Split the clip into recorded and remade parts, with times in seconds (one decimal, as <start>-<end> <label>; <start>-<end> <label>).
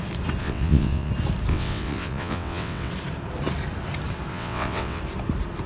0.0-0.4 recorded; 0.4-1.1 remade; 1.1-1.5 recorded; 1.5-2.9 remade; 2.9-4.3 recorded; 4.3-5.0 remade; 5.0-5.7 recorded